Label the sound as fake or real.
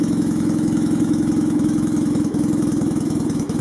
fake